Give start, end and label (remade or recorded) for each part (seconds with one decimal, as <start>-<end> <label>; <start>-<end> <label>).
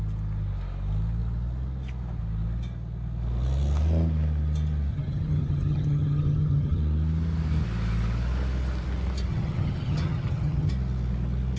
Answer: 0.0-4.9 recorded; 4.9-6.8 remade; 6.8-9.3 recorded; 9.3-10.7 remade; 10.7-11.6 recorded